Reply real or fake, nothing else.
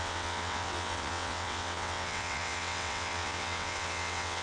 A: fake